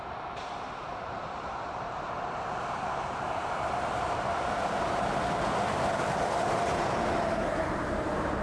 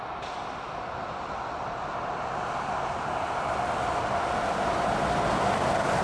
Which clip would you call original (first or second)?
second